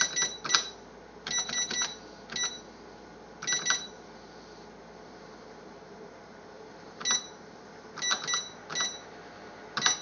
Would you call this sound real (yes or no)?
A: yes